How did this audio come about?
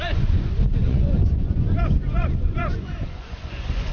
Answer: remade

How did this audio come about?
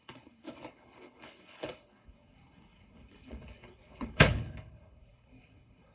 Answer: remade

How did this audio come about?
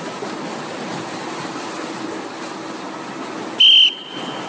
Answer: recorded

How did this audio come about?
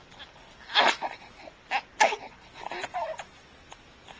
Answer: recorded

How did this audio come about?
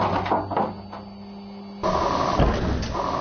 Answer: recorded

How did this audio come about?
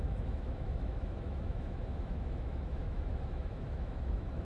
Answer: remade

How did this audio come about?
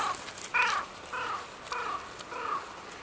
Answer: recorded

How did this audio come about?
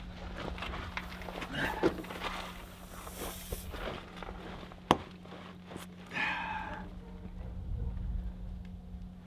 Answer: recorded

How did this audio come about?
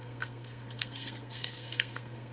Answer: remade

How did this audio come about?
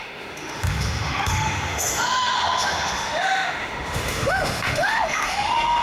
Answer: remade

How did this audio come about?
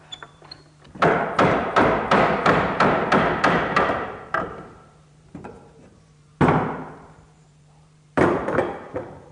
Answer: remade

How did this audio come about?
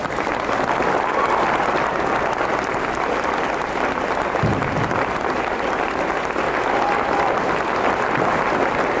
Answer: recorded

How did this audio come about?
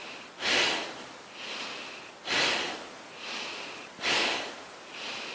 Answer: recorded